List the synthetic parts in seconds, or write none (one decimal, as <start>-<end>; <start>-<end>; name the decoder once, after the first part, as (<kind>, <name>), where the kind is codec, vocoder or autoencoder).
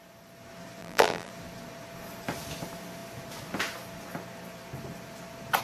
0.8-1.3 (vocoder, BigVGAN v2)